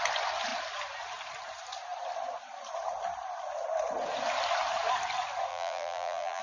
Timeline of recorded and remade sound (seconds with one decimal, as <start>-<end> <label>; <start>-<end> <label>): 0.0-5.5 recorded; 5.5-6.4 remade